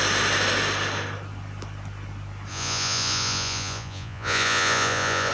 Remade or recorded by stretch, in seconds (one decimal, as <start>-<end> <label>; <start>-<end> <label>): 0.0-2.5 recorded; 2.5-5.3 remade

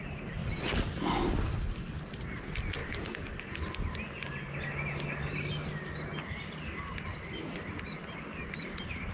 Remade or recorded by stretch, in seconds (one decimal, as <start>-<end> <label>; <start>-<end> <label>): 0.0-9.1 recorded

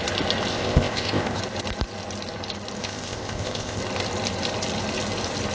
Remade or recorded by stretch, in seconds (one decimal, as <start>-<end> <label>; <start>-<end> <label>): 0.0-0.5 recorded; 0.5-1.4 remade; 1.4-2.8 recorded; 2.8-3.8 remade; 3.8-5.5 recorded

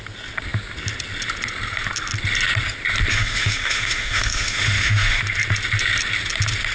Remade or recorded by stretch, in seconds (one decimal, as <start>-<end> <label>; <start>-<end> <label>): 0.0-3.1 recorded; 3.1-5.2 remade; 5.2-6.7 recorded

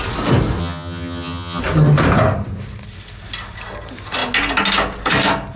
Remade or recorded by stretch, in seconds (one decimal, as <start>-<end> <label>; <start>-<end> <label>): 0.0-0.6 recorded; 0.6-1.6 remade; 1.6-5.6 recorded

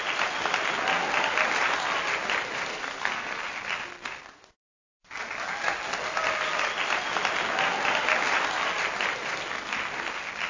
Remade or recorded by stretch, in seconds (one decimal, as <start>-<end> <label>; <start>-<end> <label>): 0.0-2.7 recorded; 2.7-3.4 remade; 3.4-10.5 recorded